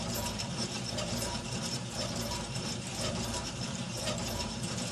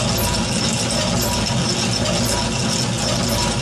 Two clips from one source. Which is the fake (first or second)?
first